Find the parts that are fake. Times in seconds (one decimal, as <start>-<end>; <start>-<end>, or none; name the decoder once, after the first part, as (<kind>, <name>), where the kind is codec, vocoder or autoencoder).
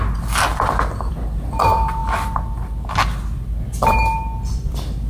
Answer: 0.0-2.0 (vocoder, BigVGAN v2); 3.7-5.1